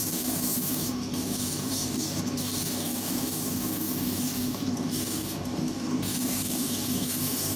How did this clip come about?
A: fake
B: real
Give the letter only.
A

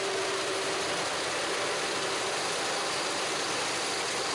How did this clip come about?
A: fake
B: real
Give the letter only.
B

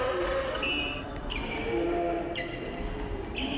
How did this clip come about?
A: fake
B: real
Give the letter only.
B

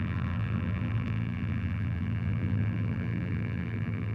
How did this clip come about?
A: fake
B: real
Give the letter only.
A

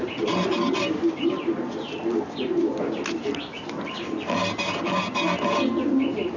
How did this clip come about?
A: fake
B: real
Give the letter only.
B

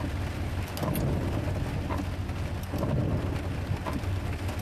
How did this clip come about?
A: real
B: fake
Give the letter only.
A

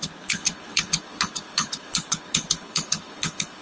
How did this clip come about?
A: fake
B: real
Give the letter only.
A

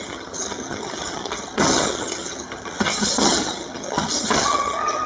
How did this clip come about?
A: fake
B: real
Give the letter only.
A